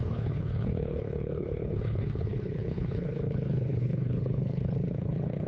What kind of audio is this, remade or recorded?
remade